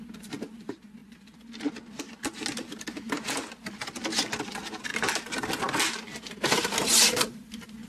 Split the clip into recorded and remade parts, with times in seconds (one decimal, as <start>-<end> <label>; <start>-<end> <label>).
0.0-7.9 recorded